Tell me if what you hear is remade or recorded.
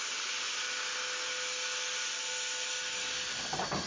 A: recorded